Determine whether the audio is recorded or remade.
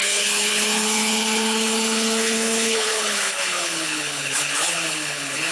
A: remade